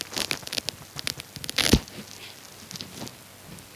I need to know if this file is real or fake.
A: real